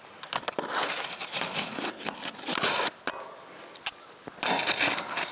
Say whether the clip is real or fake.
real